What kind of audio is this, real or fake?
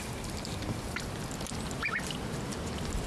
real